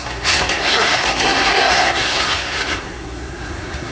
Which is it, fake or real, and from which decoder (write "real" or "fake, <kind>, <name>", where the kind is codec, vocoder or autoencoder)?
fake, codec, SNAC